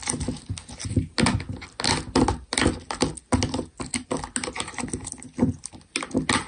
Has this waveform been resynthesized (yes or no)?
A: no